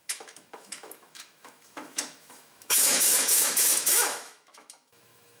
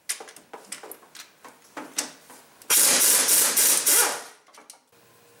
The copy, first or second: first